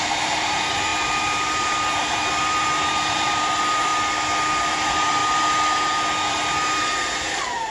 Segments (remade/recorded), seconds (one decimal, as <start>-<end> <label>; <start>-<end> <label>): 0.0-3.9 remade; 3.9-4.7 recorded; 4.7-5.2 remade; 5.2-6.3 recorded; 6.3-7.7 remade